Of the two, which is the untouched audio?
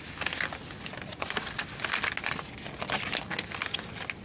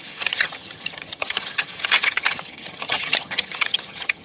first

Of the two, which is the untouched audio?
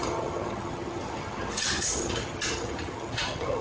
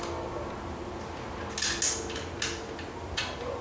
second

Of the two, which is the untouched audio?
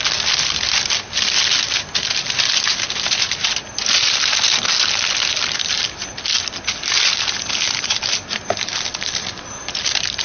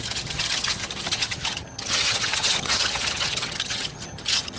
first